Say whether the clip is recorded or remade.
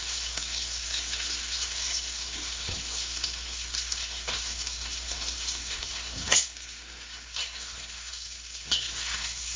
remade